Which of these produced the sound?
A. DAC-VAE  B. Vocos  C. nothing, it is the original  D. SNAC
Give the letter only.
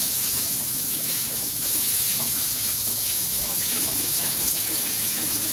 A